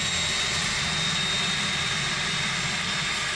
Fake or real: real